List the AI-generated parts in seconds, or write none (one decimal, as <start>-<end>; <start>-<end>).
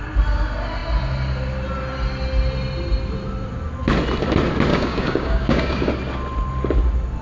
4.7-5.9